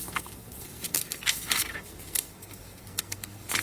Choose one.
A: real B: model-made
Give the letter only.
B